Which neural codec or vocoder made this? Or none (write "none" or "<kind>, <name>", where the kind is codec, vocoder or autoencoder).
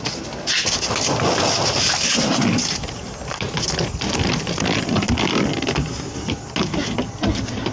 none